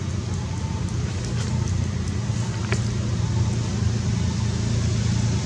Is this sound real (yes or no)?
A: yes